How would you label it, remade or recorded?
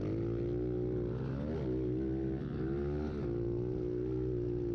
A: recorded